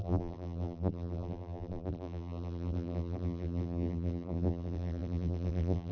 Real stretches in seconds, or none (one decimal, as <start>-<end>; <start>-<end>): none